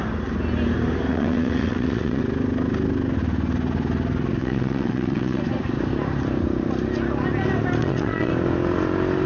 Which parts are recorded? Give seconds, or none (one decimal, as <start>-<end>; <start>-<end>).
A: 0.0-1.1; 2.2-4.4; 5.4-7.8; 8.3-9.3